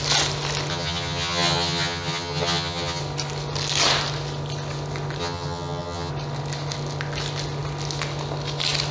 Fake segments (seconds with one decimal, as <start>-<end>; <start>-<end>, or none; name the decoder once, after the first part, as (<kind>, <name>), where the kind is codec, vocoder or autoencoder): 0.7-3.0 (vocoder, HiFi-GAN); 5.2-6.1

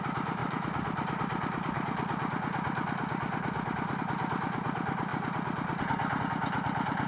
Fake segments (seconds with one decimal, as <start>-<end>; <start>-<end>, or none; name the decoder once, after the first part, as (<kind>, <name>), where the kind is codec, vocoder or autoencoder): none

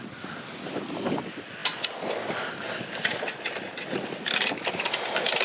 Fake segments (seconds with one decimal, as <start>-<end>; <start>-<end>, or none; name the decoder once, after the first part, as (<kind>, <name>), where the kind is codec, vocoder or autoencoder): none